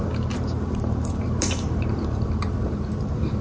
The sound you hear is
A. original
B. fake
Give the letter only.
B